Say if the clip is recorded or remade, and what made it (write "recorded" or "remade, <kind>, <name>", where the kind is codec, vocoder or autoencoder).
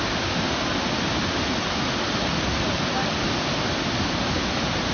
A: recorded